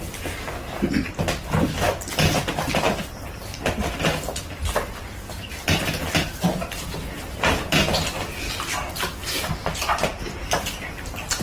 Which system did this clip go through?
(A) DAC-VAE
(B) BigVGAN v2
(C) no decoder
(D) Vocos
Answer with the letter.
C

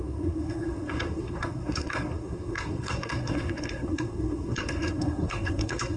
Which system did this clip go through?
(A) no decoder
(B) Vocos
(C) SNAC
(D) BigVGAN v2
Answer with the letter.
C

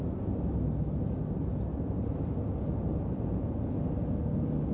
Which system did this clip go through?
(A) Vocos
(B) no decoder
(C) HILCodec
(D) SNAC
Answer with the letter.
B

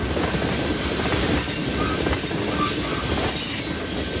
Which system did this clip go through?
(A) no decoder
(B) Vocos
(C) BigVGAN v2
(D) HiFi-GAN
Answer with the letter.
A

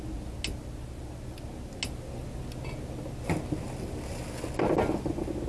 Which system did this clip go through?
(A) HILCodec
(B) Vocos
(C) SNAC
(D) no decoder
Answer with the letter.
D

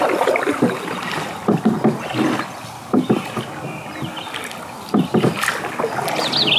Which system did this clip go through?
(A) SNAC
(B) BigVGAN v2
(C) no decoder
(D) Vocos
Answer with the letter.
C